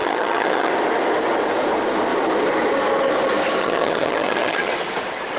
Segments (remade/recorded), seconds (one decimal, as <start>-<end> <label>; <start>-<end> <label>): 0.0-0.7 remade; 0.7-3.6 recorded; 3.6-4.7 remade; 4.7-5.4 recorded